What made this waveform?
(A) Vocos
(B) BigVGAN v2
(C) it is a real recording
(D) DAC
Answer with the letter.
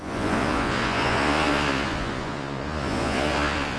A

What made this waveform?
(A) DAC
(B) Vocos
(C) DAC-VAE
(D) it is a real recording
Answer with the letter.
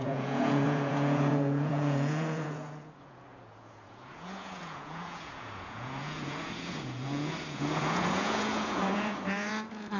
B